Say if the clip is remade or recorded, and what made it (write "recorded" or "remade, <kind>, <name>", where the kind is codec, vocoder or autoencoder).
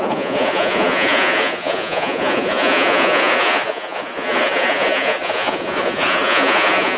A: remade, vocoder, Vocos